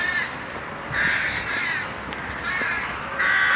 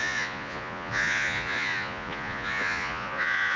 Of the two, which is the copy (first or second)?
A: second